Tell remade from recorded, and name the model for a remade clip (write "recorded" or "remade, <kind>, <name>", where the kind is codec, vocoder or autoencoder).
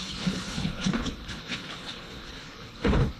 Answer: remade, codec, HILCodec